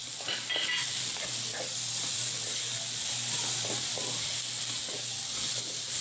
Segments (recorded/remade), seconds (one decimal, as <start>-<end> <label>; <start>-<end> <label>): 0.0-6.0 recorded